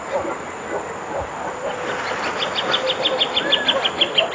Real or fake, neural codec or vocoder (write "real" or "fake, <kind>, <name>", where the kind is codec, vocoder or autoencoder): real